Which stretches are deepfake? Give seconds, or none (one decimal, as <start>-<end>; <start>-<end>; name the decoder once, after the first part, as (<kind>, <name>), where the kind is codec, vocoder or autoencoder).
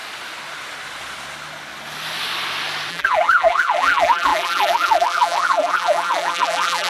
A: 2.9-6.9 (vocoder, BigVGAN v2)